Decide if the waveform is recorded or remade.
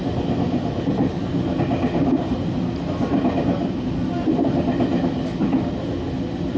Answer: recorded